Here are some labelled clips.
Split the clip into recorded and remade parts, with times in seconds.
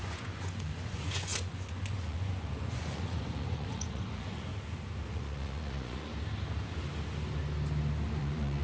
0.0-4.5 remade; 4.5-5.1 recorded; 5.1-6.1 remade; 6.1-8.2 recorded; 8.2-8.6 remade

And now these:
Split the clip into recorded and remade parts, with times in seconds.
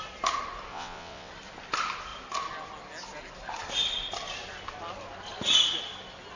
0.0-0.7 recorded; 0.7-1.3 remade; 1.3-6.4 recorded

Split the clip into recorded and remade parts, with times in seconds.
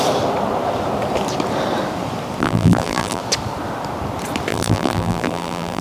0.0-2.4 recorded; 2.4-3.2 remade; 3.2-4.5 recorded; 4.5-5.8 remade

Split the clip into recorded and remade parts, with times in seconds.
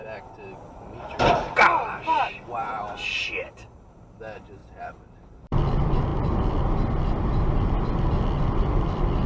0.0-1.0 recorded; 1.0-4.6 remade; 4.6-5.1 recorded; 5.1-6.1 remade; 6.1-8.4 recorded; 8.4-9.3 remade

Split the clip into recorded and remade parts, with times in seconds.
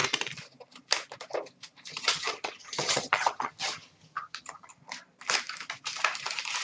0.0-1.9 recorded; 1.9-4.7 remade; 4.7-6.6 recorded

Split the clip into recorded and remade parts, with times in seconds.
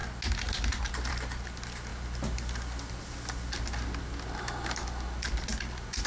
0.0-6.1 recorded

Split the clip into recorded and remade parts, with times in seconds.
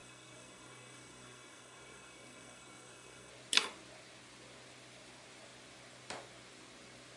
0.0-3.3 remade; 3.3-7.2 recorded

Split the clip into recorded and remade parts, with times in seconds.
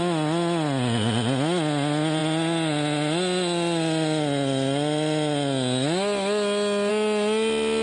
0.0-7.8 recorded